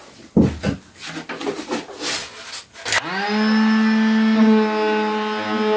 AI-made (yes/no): no